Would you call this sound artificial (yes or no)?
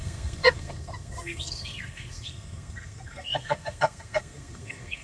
yes